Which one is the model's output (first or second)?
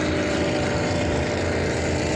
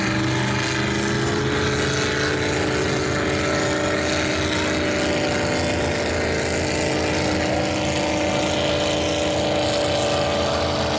first